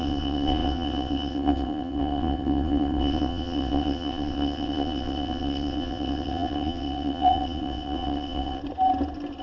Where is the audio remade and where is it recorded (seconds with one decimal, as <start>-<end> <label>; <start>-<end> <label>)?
0.0-8.6 remade; 8.6-9.4 recorded